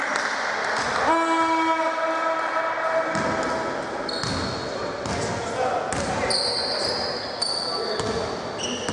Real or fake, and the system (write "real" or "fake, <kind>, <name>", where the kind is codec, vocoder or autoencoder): real